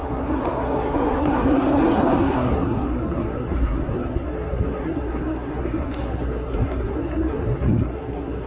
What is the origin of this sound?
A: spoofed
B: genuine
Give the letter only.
A